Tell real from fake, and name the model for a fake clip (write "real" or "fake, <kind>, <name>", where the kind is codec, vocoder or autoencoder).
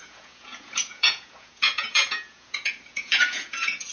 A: fake, vocoder, Vocos